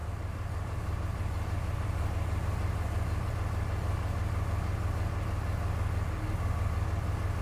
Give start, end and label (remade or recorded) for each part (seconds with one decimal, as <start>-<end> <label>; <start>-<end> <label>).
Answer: 0.0-3.3 remade; 3.3-7.4 recorded